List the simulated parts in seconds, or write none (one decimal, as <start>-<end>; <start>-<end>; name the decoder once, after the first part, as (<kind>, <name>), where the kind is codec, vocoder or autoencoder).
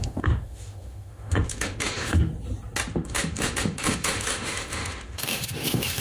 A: 0.0-2.3 (autoencoder, DAC-VAE); 2.9-6.0